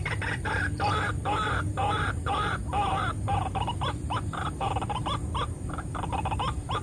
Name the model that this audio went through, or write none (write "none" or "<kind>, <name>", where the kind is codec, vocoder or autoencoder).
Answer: vocoder, BigVGAN v2